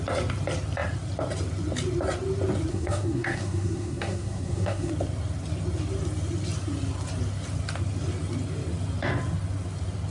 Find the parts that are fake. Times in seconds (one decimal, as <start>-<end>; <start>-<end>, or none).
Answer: 2.7-4.9